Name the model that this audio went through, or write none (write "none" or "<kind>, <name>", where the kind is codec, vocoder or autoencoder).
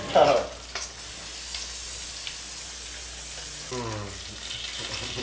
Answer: none